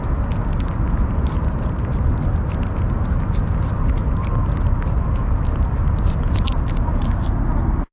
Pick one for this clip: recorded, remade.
recorded